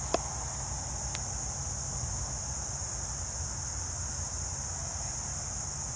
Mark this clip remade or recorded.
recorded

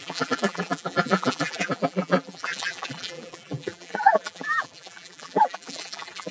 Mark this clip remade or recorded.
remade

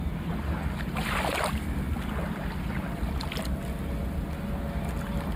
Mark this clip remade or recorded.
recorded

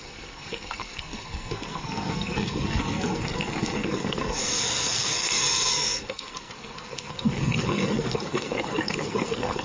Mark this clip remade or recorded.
remade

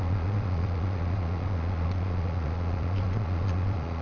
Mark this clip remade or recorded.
remade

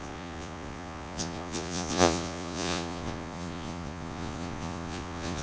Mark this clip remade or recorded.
remade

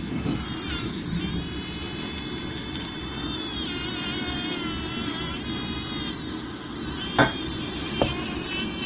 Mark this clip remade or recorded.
recorded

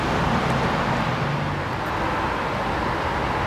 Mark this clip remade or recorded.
recorded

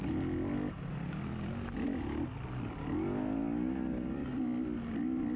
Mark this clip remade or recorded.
recorded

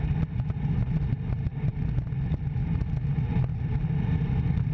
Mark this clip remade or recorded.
recorded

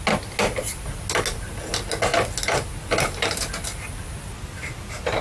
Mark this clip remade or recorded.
recorded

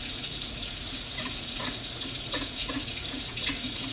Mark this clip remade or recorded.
remade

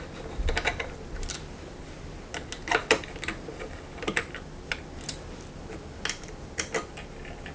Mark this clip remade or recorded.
recorded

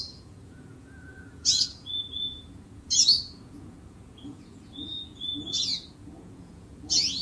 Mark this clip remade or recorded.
remade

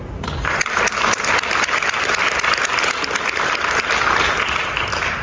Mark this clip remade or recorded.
recorded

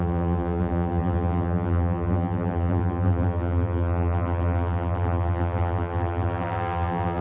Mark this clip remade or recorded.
remade